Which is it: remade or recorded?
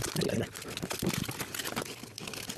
recorded